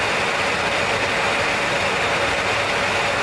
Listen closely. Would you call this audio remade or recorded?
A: recorded